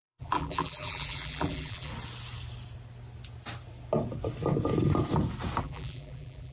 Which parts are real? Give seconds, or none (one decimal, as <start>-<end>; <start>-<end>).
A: 1.9-5.6